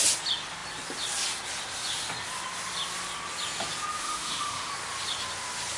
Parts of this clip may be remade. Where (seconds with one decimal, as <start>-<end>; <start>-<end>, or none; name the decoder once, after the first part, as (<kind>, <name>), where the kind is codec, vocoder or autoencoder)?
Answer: 4.0-4.7 (autoencoder, DAC-VAE)